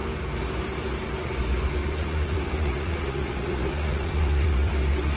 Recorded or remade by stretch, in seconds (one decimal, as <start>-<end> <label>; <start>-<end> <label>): 0.0-1.8 recorded; 1.8-4.7 remade; 4.7-5.2 recorded